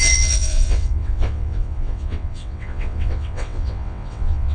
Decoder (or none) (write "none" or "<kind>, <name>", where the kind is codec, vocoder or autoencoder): vocoder, WaveNeXt